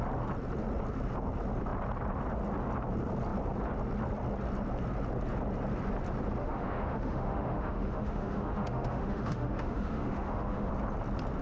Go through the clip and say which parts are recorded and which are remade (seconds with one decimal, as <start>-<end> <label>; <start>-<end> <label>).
0.0-6.4 recorded; 6.4-10.7 remade; 10.7-11.4 recorded